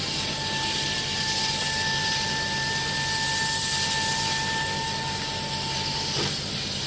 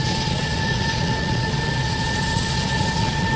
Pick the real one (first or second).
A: first